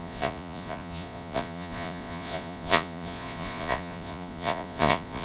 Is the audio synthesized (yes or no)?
yes